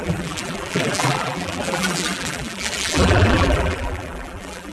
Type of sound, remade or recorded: remade